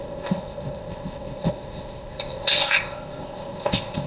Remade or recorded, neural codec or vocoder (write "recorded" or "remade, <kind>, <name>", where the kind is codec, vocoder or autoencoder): remade, codec, ZipCodec